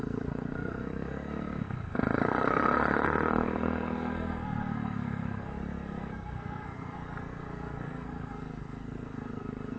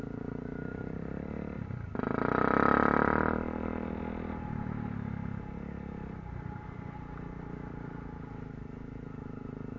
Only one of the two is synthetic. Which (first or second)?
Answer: first